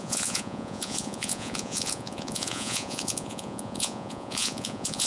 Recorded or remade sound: remade